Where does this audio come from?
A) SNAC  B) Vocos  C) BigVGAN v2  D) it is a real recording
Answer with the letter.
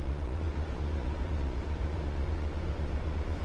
B